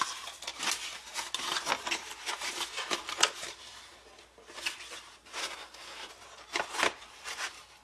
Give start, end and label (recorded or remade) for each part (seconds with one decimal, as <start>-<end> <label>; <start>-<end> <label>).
0.0-5.4 recorded; 5.4-6.1 remade; 6.1-7.8 recorded